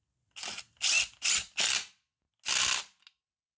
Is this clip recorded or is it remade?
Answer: recorded